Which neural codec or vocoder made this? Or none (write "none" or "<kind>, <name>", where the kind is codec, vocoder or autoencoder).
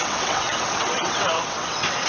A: vocoder, WaveNeXt